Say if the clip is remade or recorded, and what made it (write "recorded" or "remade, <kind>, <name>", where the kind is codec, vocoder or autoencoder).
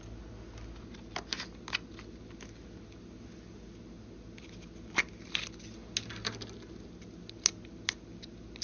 recorded